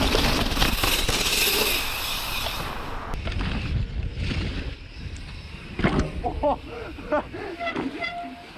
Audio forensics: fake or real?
real